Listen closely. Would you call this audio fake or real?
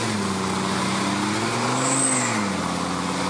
real